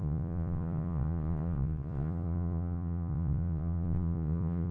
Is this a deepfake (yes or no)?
yes